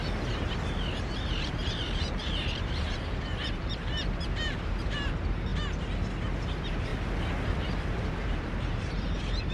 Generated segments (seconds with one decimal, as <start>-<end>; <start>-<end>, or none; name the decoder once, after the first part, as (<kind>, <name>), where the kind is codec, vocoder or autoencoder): 0.9-5.5 (vocoder, BigVGAN v2); 6.5-6.9; 7.5-9.5

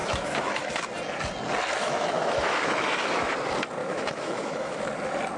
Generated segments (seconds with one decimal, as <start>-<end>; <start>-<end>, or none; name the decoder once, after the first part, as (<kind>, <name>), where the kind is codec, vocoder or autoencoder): 0.0-0.8 (autoencoder, DAC-VAE); 1.8-3.3; 3.8-4.8

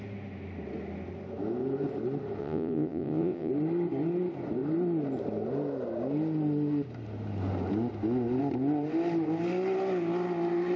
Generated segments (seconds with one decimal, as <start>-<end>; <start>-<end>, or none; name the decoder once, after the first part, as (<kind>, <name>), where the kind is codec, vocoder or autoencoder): 2.4-3.5 (vocoder, WaveNeXt)

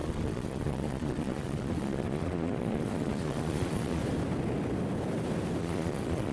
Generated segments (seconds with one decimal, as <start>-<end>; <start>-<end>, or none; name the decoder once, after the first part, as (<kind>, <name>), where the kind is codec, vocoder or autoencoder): 0.0-4.0 (vocoder, Vocos); 5.6-6.3